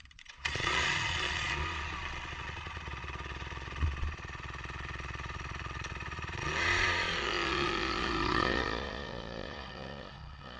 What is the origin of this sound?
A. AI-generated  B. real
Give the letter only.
A